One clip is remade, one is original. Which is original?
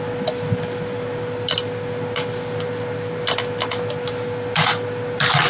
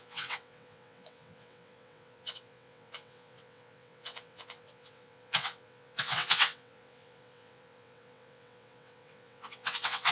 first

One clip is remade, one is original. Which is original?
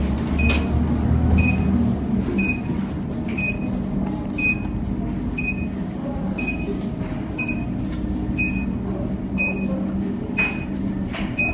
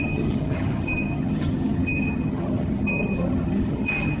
first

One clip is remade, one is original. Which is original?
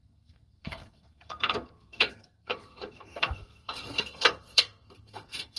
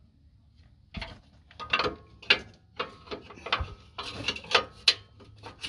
second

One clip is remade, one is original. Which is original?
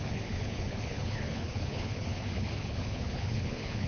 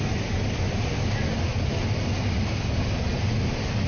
second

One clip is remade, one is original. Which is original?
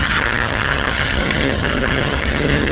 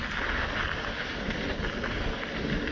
second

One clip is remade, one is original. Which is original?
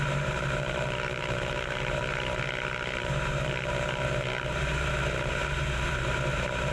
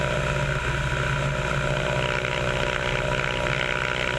second